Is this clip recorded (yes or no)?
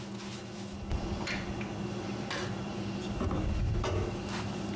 yes